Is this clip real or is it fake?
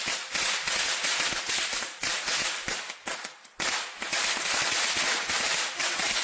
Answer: fake